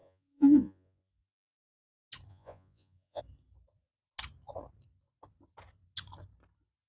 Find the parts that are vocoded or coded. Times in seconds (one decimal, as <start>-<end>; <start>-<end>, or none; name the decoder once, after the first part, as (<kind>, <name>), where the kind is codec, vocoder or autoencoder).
0.0-1.9 (vocoder, Vocos); 2.3-3.2